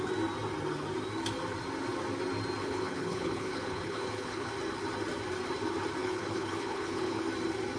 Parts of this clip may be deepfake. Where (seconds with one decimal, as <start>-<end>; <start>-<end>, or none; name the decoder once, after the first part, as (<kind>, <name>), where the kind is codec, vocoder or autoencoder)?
2.6-4.5 (codec, HILCodec); 6.0-7.2